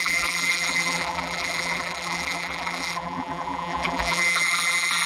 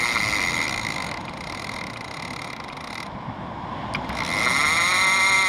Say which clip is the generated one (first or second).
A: first